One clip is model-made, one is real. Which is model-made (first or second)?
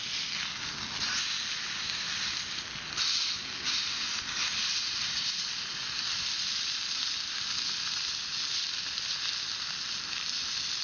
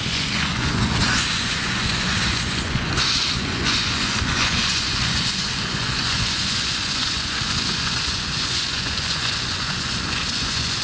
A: second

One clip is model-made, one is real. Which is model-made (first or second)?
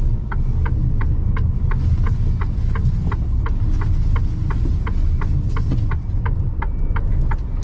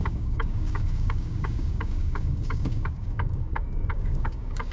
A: second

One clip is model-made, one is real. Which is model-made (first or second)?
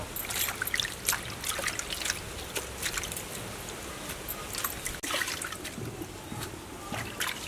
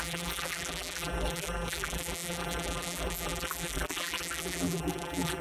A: second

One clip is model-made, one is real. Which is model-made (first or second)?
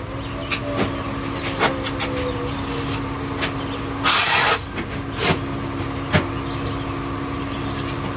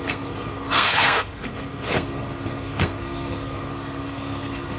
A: second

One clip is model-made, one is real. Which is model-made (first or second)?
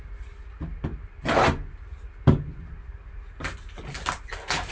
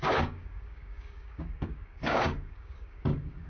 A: second